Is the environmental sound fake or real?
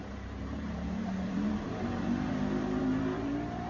fake